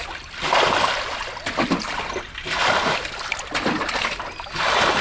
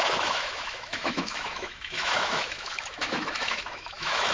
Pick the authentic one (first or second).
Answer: first